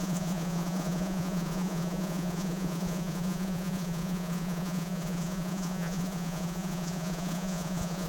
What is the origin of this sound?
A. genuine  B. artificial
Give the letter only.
B